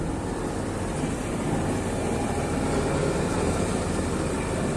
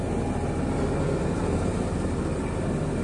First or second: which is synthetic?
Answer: first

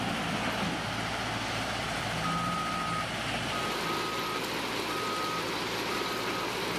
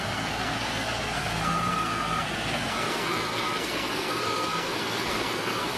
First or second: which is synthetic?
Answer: second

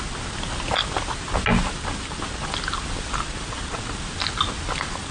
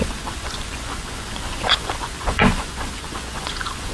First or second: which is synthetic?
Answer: second